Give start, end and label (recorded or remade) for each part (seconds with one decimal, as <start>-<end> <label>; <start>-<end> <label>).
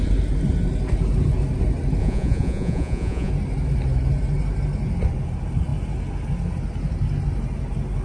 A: 0.0-2.0 recorded; 2.0-3.3 remade; 3.3-8.0 recorded